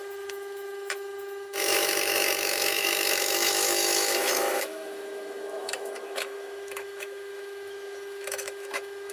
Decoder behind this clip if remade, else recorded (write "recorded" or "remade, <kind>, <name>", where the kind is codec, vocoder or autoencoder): remade, autoencoder, DAC-VAE